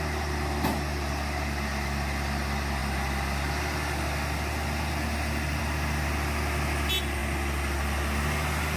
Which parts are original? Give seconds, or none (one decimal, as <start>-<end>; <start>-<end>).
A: 0.0-8.8